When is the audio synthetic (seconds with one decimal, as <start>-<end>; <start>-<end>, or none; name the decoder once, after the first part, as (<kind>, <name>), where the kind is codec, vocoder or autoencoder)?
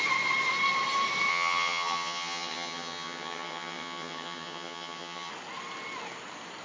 1.3-5.3 (vocoder, HiFi-GAN)